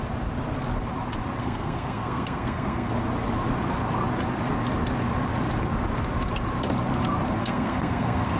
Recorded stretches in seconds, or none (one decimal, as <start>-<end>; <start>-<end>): 0.0-1.4; 2.9-7.4